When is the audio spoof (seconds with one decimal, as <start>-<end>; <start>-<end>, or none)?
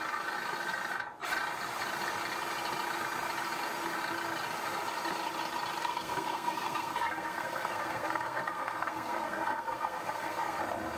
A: 5.8-10.6